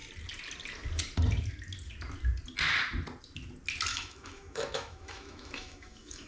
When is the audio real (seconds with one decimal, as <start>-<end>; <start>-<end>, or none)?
0.0-3.9